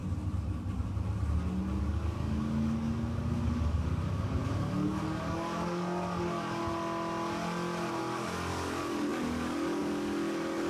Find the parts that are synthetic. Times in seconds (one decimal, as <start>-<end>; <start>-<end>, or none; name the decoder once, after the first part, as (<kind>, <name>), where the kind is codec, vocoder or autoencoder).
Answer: 1.8-6.6 (codec, DAC); 8.0-10.7